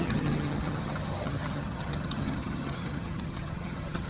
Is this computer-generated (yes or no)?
yes